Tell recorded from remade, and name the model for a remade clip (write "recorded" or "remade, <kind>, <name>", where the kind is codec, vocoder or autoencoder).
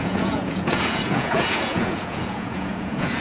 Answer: remade, vocoder, Vocos